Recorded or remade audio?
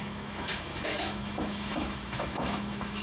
remade